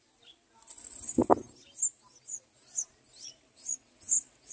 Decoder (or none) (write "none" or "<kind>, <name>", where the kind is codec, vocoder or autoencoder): none